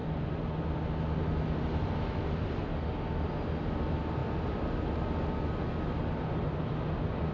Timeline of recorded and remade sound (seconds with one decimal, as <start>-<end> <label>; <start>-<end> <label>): 0.0-7.3 recorded